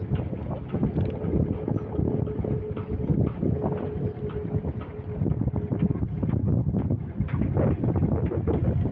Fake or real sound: real